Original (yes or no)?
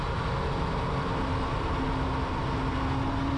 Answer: yes